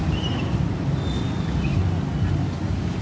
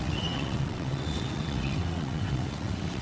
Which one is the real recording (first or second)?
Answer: first